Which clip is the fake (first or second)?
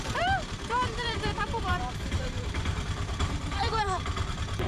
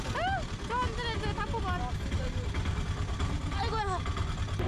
first